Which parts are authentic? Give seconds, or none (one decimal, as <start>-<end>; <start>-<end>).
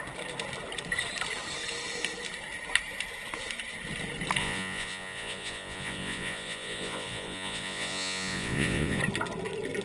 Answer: 0.0-4.4; 9.0-9.8